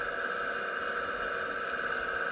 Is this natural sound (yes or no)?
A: yes